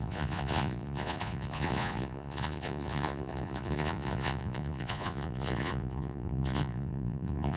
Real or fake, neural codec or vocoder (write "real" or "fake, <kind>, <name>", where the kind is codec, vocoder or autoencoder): fake, vocoder, Vocos